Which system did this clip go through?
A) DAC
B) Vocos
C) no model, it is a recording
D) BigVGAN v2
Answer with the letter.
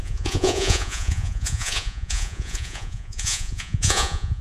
B